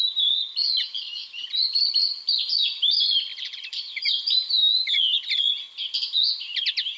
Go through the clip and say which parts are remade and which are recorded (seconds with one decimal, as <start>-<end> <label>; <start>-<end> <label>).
0.0-1.4 recorded; 1.4-2.9 remade; 2.9-3.3 recorded; 3.3-4.5 remade; 4.5-7.0 recorded